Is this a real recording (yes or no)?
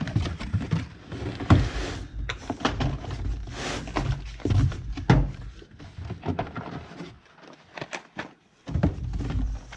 yes